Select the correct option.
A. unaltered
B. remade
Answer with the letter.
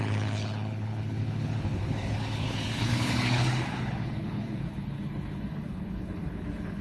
B